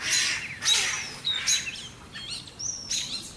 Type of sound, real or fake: real